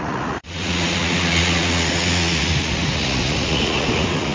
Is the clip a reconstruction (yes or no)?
yes